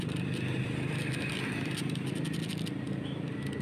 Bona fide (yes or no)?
yes